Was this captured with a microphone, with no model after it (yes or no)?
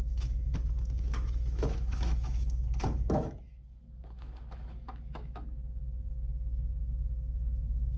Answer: no